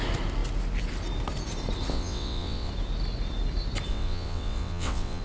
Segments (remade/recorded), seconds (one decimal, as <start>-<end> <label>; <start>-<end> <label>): 0.0-1.9 recorded; 1.9-2.7 remade; 2.7-3.9 recorded; 3.9-5.2 remade